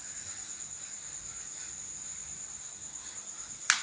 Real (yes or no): yes